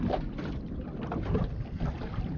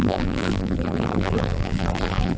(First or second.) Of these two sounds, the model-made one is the second